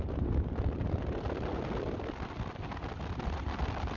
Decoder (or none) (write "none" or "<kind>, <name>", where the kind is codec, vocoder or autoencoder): none